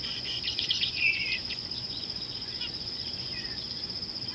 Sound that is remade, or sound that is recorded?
remade